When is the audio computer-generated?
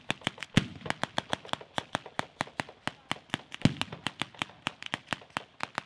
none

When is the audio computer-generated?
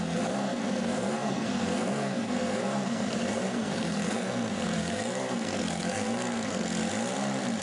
0.0-6.8 (codec, SNAC)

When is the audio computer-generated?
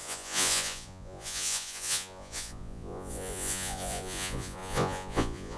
0.0-5.6 (vocoder, Vocos)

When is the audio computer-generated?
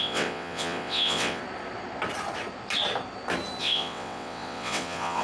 0.0-1.4 (vocoder, WaveNeXt); 3.6-5.2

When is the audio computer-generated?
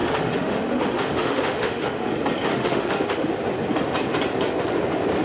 0.0-2.1 (autoencoder, DAC-VAE); 2.5-3.3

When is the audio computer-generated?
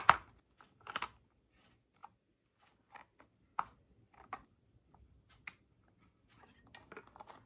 none